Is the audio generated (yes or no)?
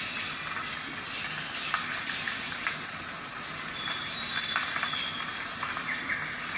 no